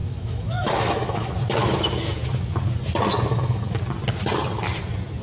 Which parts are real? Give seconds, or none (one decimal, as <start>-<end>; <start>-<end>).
1.3-3.3; 3.8-5.2